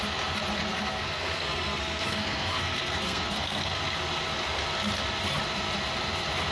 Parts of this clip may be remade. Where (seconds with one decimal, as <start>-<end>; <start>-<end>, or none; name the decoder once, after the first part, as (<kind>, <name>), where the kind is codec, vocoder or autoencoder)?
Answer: 0.6-3.8 (codec, SNAC)